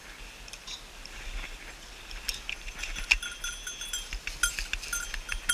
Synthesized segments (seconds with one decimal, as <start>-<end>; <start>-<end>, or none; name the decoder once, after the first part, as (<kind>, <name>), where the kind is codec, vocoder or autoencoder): none